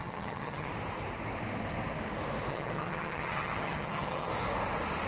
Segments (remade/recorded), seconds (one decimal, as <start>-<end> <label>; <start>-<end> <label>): 0.0-0.7 remade; 0.7-2.5 recorded; 2.5-4.3 remade; 4.3-5.1 recorded